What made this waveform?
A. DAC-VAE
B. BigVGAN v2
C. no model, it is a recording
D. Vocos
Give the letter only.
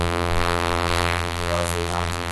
B